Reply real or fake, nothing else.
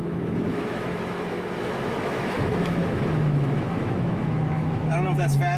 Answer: fake